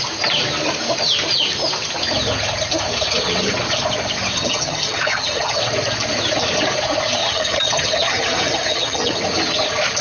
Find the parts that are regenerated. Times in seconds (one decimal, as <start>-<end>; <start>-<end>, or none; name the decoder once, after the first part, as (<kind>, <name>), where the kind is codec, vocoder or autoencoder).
4.3-5.6 (vocoder, HiFi-GAN); 7.2-9.2